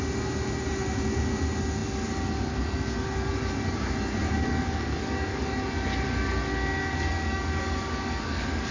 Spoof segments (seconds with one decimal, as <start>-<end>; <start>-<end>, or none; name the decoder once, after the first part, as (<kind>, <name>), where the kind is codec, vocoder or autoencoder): 4.2-5.6 (codec, DAC); 6.8-8.7